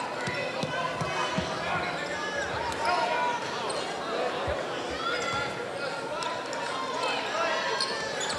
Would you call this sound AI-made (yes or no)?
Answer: no